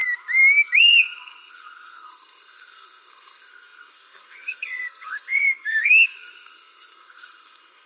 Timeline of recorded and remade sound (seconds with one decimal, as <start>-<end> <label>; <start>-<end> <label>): 0.0-0.8 recorded; 0.8-7.9 remade